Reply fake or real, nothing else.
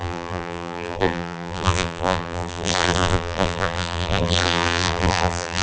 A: fake